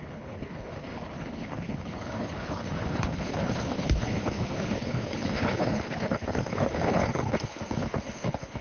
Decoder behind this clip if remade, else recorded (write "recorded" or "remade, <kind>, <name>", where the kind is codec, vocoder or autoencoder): remade, codec, HILCodec